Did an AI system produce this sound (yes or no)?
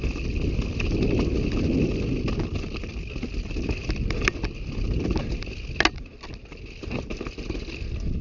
no